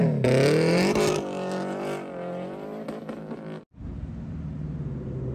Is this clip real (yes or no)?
yes